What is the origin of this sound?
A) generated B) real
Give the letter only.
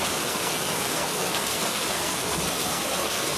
A